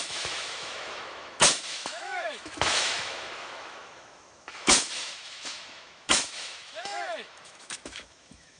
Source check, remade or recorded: remade